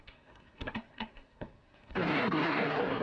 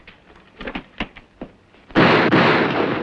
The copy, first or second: first